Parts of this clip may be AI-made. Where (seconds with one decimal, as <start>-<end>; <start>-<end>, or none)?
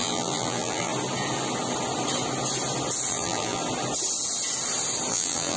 0.0-0.9; 3.1-3.6; 5.1-5.6